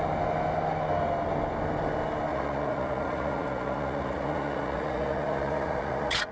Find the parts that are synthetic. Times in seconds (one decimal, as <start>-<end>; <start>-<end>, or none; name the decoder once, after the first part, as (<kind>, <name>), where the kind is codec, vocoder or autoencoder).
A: 2.3-6.3 (vocoder, Vocos)